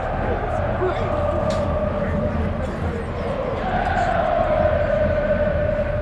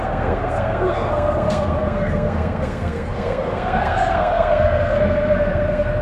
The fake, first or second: second